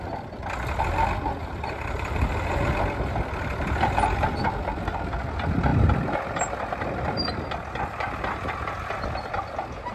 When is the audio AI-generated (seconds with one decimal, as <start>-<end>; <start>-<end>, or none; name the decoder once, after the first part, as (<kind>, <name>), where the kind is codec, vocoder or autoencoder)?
1.4-2.7 (vocoder, BigVGAN v2)